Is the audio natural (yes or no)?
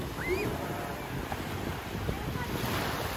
yes